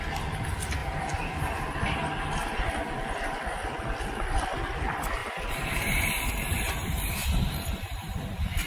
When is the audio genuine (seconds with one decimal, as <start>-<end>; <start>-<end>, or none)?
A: 0.0-0.8; 2.6-5.2